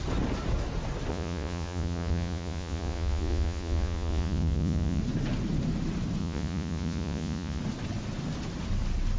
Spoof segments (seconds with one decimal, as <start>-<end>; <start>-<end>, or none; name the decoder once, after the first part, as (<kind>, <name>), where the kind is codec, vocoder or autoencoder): 1.1-5.0 (vocoder, Vocos); 6.2-7.6